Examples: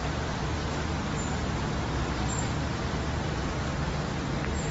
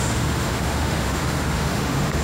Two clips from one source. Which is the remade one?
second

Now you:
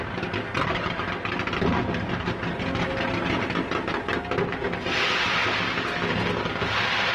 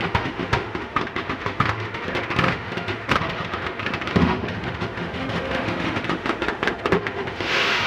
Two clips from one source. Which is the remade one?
second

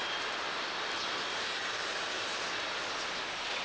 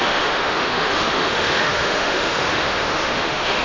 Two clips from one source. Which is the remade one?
second